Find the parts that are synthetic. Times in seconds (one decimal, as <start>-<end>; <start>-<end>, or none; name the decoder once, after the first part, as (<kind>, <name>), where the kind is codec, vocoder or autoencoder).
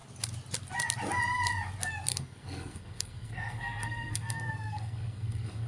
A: 2.1-5.7 (codec, SNAC)